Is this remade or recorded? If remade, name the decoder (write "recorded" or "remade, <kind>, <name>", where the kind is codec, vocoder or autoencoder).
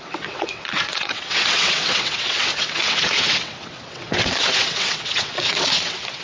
remade, vocoder, WaveNeXt